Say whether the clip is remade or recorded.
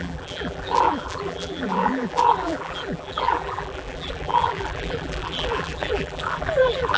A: remade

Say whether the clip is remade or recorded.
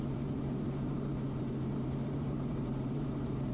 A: remade